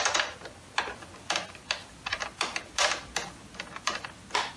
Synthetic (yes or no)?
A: no